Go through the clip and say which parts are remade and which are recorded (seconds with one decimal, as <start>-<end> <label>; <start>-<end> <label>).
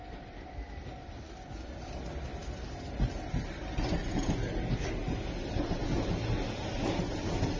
0.0-7.6 recorded